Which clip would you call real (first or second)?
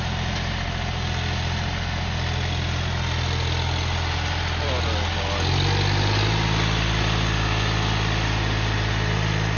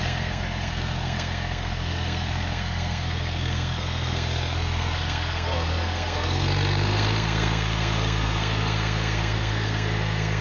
first